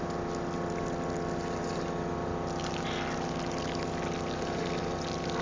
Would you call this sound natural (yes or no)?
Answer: yes